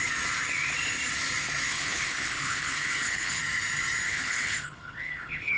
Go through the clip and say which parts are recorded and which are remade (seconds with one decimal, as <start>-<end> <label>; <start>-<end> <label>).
0.0-1.7 recorded; 1.7-3.4 remade; 3.4-4.1 recorded; 4.1-5.6 remade